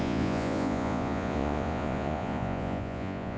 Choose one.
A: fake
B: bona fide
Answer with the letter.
A